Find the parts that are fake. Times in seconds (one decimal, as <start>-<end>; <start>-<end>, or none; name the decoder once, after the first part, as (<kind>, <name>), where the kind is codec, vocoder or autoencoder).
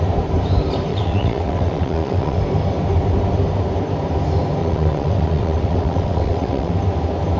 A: 0.9-2.4 (vocoder, WaveNeXt); 4.6-6.7